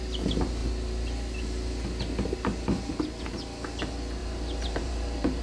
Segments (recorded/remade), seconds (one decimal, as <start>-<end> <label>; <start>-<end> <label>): 0.0-4.2 recorded; 4.2-5.4 remade